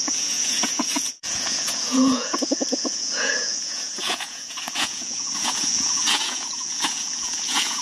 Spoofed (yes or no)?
yes